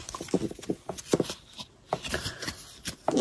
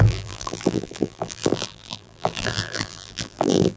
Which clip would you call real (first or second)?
first